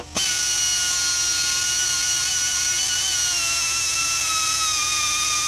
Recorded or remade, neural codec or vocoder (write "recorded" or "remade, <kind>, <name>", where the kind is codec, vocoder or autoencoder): recorded